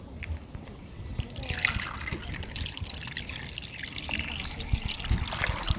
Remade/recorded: recorded